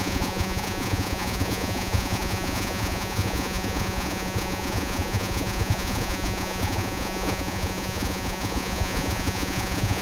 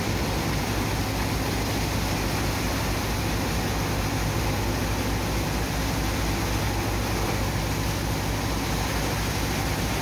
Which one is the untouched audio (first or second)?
second